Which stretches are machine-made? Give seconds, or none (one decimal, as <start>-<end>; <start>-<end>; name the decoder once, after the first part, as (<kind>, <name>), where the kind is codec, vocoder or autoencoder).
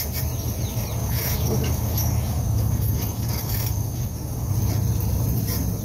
1.0-4.5 (codec, DAC)